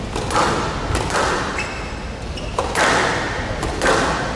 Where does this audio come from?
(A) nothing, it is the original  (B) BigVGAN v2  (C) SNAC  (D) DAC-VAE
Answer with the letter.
A